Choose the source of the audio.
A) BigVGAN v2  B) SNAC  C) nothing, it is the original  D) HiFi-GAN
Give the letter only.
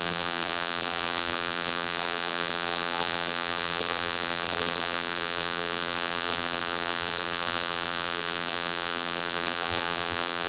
A